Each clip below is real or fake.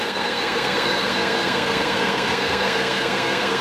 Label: fake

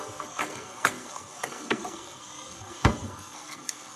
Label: fake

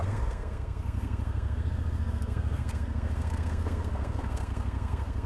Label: fake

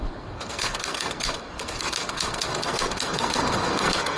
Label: fake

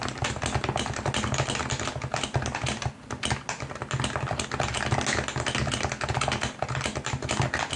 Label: real